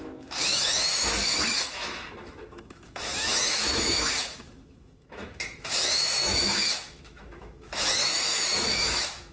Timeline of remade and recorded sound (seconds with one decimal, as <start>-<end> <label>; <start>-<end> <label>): 0.0-9.3 remade